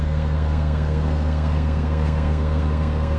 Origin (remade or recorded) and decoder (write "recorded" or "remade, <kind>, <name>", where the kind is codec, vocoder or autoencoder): remade, codec, SNAC